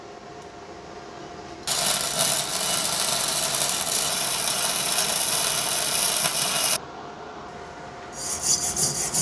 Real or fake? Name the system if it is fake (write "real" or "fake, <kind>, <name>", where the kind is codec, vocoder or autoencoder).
real